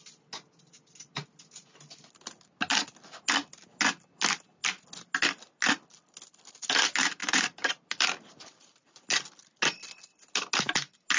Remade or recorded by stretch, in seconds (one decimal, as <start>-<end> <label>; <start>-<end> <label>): 0.0-7.2 recorded; 7.2-9.1 remade; 9.1-11.2 recorded